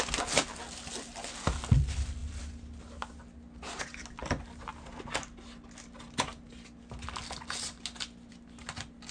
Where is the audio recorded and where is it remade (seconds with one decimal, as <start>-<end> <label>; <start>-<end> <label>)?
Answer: 0.0-9.1 recorded